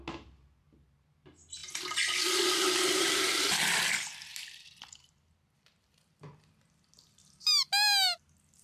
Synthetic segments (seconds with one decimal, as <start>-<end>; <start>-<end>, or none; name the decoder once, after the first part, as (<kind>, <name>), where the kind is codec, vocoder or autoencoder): 4.3-7.7 (vocoder, BigVGAN v2)